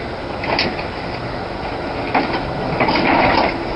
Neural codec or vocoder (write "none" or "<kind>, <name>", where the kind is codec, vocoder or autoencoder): none